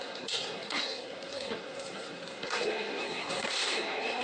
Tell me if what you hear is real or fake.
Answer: fake